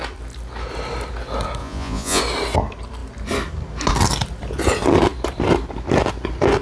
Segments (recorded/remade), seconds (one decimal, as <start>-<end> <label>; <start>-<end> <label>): 0.0-1.6 recorded; 1.6-2.2 remade; 2.2-6.6 recorded